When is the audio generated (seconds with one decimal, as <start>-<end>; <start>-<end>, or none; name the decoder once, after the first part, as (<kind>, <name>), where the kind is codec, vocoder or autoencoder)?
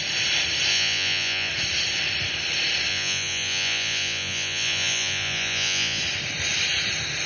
0.7-1.5 (vocoder, Vocos); 2.9-6.0